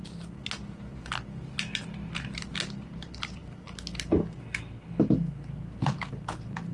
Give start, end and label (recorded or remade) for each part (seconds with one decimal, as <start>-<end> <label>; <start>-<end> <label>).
0.0-6.7 recorded